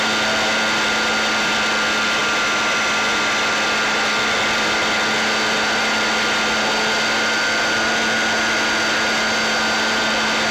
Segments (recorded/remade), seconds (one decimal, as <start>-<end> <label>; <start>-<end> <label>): 0.0-10.5 recorded